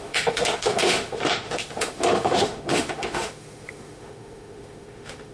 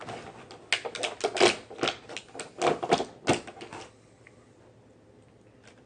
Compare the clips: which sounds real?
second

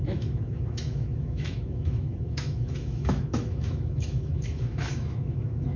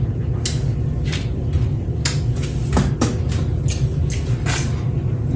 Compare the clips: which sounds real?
second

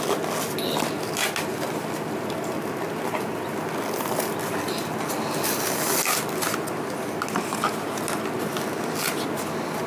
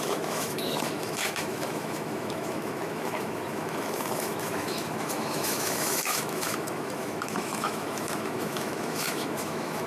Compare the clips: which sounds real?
first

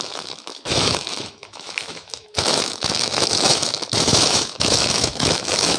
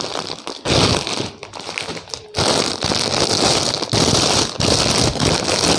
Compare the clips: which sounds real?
second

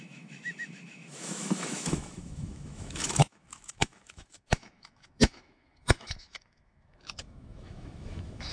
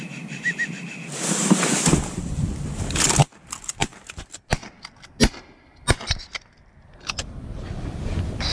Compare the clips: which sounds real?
second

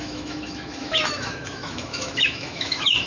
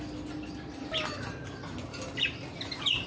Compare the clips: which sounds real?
second